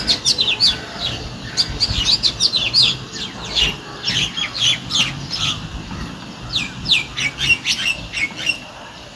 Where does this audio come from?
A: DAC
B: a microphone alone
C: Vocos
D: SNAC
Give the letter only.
B